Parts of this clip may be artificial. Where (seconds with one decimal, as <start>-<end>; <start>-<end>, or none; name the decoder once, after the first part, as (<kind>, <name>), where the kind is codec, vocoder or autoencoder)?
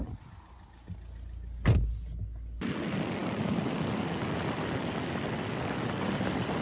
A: none